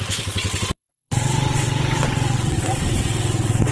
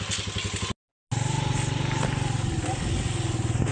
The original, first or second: second